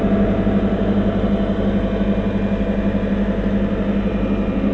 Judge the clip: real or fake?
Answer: real